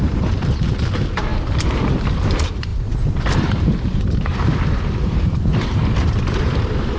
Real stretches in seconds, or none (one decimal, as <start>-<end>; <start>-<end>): none